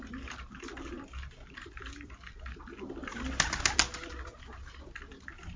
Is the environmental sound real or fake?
real